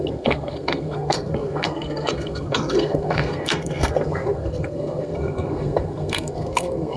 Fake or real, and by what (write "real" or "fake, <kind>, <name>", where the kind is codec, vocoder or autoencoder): fake, codec, SNAC